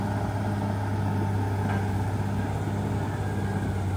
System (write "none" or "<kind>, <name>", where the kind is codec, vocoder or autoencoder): none